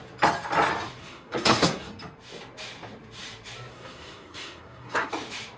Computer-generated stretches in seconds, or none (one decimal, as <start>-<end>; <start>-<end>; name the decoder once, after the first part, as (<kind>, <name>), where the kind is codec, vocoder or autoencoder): 1.0-1.9 (codec, SNAC); 3.7-5.1